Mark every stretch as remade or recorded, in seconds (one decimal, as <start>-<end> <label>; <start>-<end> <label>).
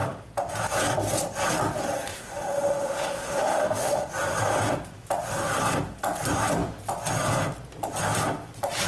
0.0-2.1 recorded; 2.1-4.1 remade; 4.1-8.9 recorded